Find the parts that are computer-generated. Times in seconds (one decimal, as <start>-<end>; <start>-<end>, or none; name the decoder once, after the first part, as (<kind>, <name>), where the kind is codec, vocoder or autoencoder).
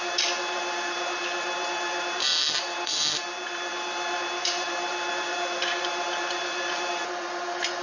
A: 0.0-7.8 (vocoder, BigVGAN v2)